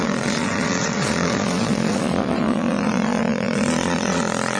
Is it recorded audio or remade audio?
remade